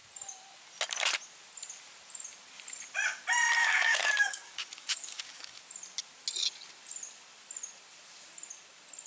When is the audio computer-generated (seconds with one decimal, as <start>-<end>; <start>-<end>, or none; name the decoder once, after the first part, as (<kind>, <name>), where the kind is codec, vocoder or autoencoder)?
3.6-5.6 (codec, DAC)